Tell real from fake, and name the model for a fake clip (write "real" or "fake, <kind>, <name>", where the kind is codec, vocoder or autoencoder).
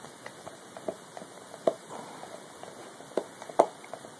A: real